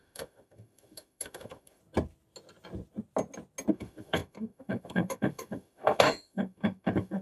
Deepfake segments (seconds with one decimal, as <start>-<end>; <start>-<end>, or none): 0.0-1.8; 3.7-7.2